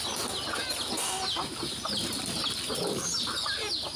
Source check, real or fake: real